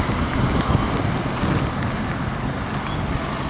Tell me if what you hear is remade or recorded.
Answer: recorded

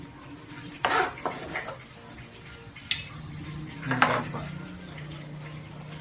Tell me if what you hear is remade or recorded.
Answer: recorded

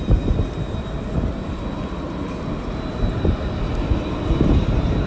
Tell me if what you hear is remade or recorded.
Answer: recorded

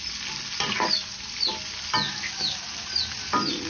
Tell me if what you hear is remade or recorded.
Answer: recorded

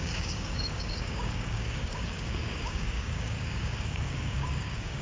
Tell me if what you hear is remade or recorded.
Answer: remade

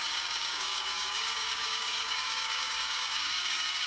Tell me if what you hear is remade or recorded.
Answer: remade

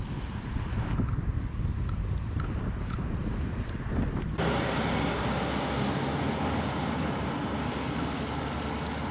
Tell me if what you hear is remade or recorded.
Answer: recorded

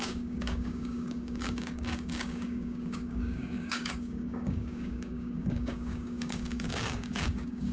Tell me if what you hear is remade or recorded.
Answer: remade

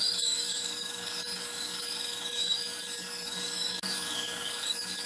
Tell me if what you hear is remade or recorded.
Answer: remade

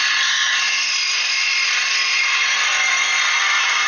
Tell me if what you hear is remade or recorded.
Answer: recorded